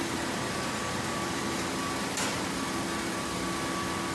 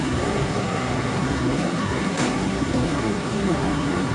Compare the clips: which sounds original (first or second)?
first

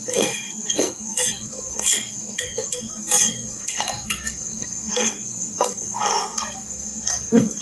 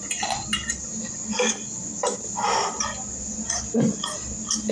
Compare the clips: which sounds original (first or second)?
second